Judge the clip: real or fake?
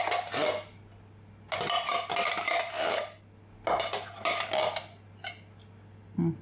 real